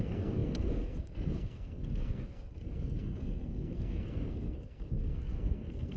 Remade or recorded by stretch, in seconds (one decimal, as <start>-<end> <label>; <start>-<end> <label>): 0.0-6.0 remade